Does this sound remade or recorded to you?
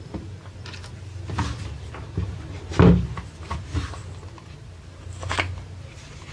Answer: recorded